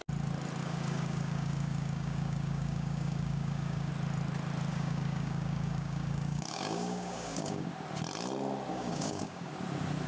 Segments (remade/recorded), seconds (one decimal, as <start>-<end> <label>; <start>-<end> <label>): 0.0-0.6 recorded; 0.6-3.9 remade; 3.9-4.7 recorded; 4.7-7.7 remade; 7.7-8.7 recorded; 8.7-9.5 remade; 9.5-10.1 recorded